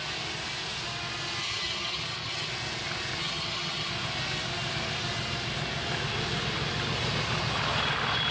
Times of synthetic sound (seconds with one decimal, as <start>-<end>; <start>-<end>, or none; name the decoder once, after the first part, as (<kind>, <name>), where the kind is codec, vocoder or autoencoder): 1.4-2.5 (vocoder, HiFi-GAN); 3.2-3.9